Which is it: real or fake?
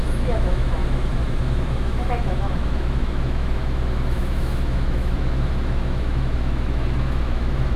fake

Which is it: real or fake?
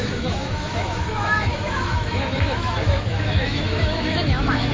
fake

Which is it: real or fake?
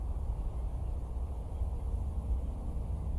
real